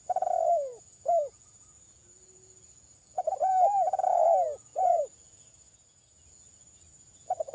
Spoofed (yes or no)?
yes